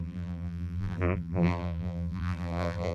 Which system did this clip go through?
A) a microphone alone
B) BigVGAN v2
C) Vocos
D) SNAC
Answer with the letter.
B